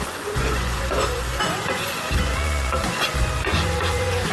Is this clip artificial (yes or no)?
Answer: yes